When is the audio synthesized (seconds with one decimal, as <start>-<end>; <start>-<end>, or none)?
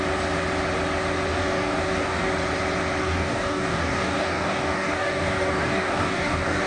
1.3-2.3; 3.0-6.7